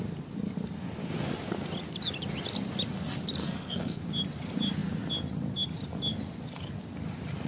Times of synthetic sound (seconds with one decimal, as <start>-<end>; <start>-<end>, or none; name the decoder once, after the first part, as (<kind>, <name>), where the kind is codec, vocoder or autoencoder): 3.4-4.0 (codec, SNAC)